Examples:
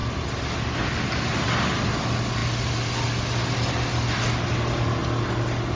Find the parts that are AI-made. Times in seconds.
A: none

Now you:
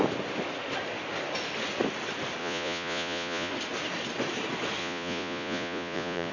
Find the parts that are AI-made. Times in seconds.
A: 2.4-3.5 (vocoder, Vocos); 4.8-6.3

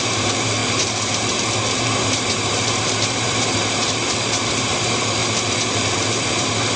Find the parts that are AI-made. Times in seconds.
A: 0.0-5.2 (vocoder, BigVGAN v2); 5.9-6.8

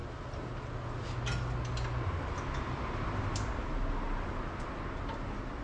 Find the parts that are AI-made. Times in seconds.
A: none

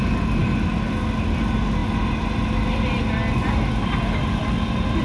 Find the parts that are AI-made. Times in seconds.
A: none

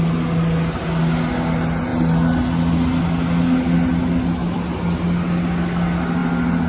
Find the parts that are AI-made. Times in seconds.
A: none